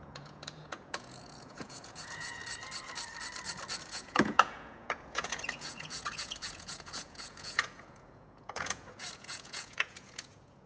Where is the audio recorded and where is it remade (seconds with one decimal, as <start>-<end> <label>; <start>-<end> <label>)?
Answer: 0.0-2.4 remade; 2.4-3.9 recorded; 3.9-10.7 remade